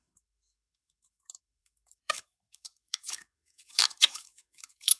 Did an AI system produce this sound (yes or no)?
yes